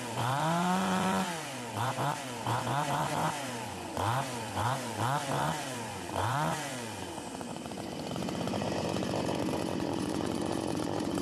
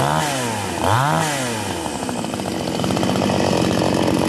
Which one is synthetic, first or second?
first